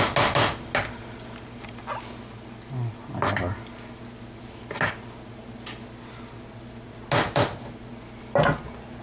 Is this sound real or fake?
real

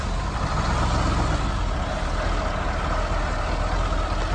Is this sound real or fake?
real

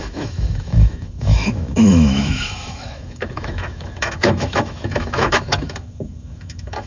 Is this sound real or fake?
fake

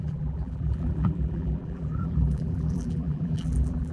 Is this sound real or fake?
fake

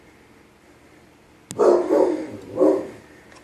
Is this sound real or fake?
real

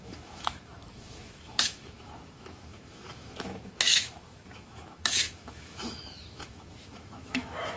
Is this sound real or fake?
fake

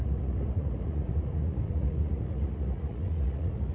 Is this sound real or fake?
fake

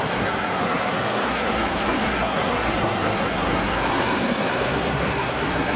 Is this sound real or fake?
fake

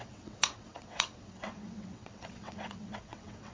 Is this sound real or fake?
fake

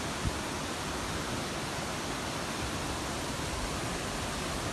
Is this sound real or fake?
real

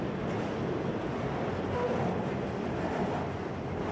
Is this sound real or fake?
real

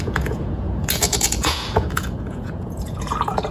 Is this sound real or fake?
fake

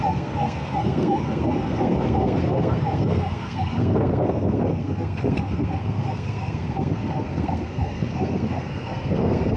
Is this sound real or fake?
fake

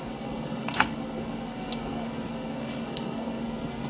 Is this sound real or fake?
fake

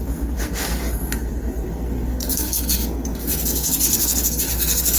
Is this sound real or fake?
fake